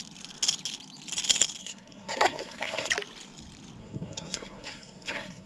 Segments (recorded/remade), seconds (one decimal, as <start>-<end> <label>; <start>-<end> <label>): 0.0-1.6 recorded; 1.6-2.9 remade; 2.9-3.8 recorded; 3.8-5.5 remade